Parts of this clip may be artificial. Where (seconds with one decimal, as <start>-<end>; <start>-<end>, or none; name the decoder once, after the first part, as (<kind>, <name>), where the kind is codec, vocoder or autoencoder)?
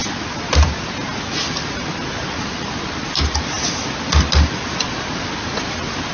none